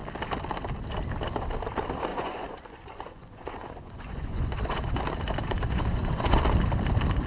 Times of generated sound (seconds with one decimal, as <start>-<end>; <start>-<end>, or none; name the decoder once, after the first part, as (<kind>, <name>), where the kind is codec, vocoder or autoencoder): 2.1-5.0 (vocoder, Vocos); 5.4-6.4